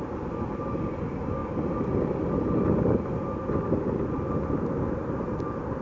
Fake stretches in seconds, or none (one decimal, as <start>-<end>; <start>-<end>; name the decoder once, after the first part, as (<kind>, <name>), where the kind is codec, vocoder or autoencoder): none